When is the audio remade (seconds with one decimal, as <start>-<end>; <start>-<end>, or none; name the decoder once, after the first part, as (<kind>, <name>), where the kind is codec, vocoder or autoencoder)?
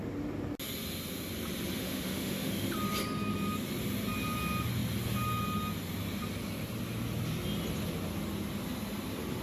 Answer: 1.8-2.7 (autoencoder, DAC-VAE)